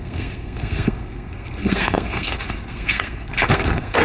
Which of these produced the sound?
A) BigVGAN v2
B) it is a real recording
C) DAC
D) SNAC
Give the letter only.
D